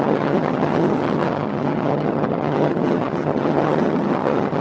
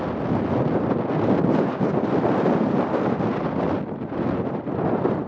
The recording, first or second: second